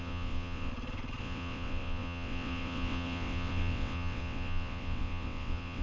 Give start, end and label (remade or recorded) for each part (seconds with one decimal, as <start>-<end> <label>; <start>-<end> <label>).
0.0-0.7 remade; 0.7-1.2 recorded; 1.2-5.8 remade